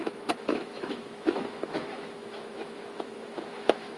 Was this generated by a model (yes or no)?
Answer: yes